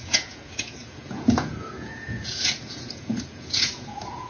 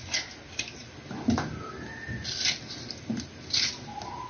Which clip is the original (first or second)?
second